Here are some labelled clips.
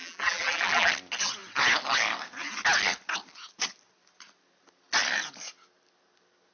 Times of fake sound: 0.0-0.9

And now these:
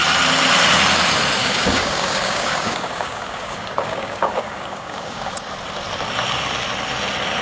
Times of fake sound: 1.4-5.3

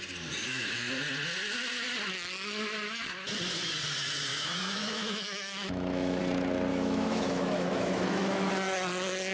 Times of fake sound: 0.4-1.0; 4.3-6.2; 6.7-8.5

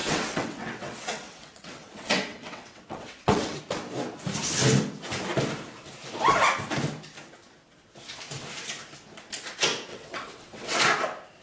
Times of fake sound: 0.0-3.6; 9.9-10.8

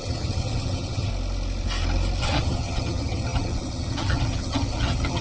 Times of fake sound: 0.0-1.1; 2.2-5.2